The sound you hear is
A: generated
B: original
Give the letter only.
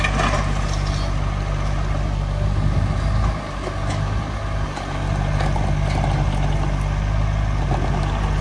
B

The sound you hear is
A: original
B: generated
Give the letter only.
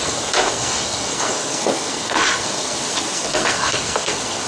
B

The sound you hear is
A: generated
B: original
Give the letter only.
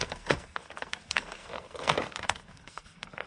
A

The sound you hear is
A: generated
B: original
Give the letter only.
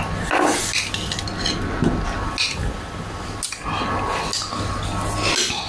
B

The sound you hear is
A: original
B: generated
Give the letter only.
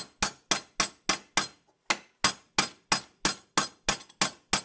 A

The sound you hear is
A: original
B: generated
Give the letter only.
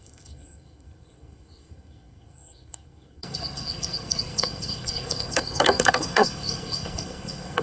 B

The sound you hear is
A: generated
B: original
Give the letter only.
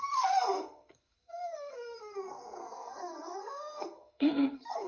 A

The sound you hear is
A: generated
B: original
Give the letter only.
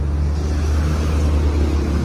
B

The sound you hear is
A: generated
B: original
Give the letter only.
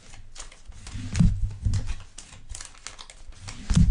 B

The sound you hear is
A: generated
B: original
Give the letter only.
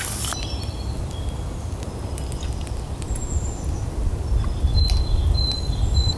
B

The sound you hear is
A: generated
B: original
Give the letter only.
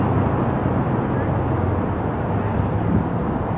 B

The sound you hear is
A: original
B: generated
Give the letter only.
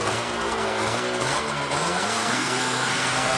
B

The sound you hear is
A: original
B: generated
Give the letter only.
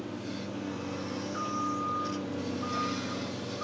A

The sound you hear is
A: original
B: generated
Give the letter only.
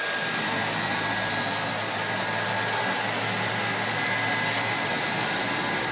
A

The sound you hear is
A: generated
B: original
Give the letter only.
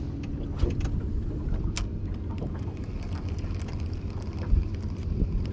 B